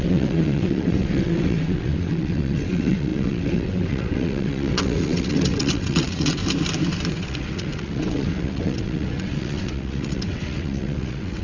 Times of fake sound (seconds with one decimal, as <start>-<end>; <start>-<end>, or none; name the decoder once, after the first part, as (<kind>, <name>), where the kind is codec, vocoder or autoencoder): 0.0-6.4 (vocoder, WaveNeXt); 7.1-11.4